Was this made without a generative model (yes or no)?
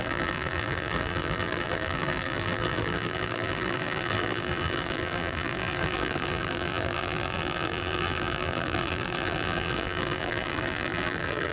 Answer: no